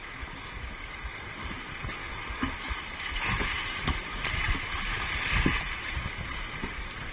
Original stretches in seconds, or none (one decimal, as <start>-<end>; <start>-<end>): 1.2-2.0; 4.2-7.1